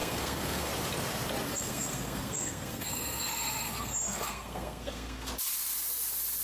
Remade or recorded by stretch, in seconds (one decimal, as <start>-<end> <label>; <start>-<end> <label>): 0.0-0.7 remade; 0.7-1.5 recorded; 1.5-5.3 remade; 5.3-6.4 recorded